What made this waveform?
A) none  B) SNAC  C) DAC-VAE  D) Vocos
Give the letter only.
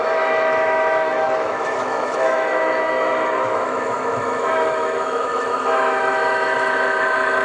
C